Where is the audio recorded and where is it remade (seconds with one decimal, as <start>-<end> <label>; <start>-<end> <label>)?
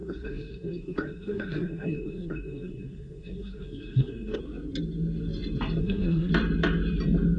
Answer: 0.0-4.4 remade; 4.4-5.8 recorded; 5.8-6.3 remade; 6.3-7.4 recorded